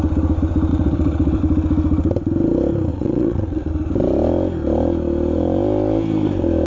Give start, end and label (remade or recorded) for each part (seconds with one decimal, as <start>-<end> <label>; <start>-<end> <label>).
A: 0.0-0.7 recorded; 0.7-1.4 remade; 1.4-2.9 recorded; 2.9-3.7 remade; 3.7-6.7 recorded